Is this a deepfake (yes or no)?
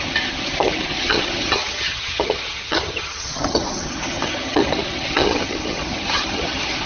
yes